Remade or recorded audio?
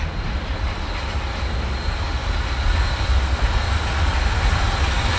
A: recorded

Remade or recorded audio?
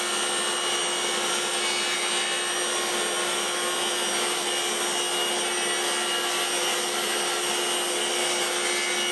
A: recorded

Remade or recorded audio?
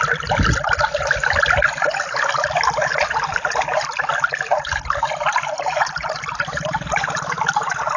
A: recorded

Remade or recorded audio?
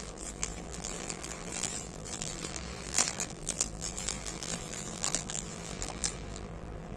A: remade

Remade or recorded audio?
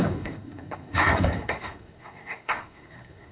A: remade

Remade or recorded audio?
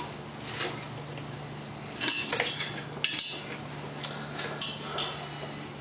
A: recorded